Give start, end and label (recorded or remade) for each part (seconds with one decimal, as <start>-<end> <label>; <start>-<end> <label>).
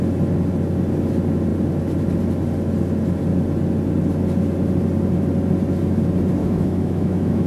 0.0-6.4 recorded; 6.4-7.5 remade